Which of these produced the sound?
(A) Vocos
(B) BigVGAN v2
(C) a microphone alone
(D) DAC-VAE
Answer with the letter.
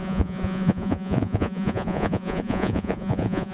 A